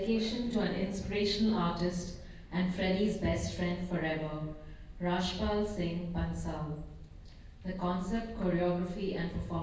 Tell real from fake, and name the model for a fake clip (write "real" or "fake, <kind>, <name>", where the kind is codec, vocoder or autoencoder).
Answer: real